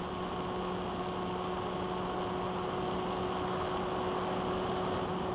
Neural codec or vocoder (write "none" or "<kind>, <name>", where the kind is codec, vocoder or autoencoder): none